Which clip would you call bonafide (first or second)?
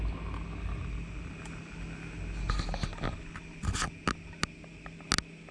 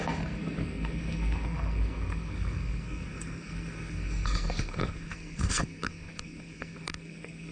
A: first